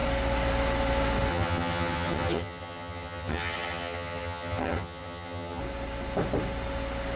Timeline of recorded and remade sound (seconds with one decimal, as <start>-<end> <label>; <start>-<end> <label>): 0.0-1.3 recorded; 1.3-5.6 remade; 5.6-7.2 recorded